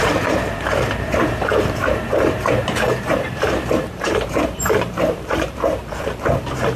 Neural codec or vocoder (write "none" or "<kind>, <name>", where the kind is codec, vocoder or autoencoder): vocoder, BigVGAN v2